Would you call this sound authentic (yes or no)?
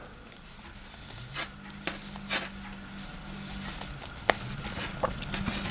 yes